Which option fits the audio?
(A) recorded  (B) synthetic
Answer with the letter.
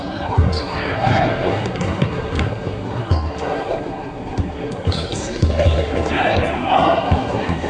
B